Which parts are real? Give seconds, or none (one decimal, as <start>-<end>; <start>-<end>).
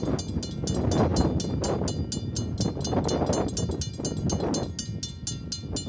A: 0.0-5.9